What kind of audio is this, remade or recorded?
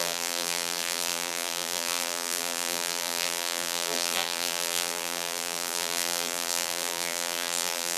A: remade